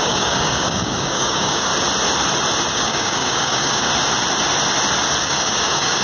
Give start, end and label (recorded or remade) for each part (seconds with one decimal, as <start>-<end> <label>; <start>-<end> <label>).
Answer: 0.0-1.7 remade; 1.7-2.7 recorded; 2.7-3.9 remade; 3.9-5.2 recorded; 5.2-6.0 remade